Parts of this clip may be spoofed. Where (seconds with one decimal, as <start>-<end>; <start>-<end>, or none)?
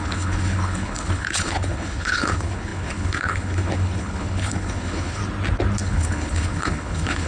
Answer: 0.0-5.2; 5.8-7.3